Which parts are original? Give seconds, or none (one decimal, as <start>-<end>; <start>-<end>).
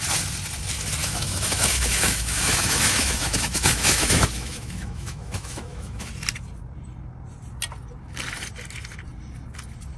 0.0-1.0; 6.1-10.0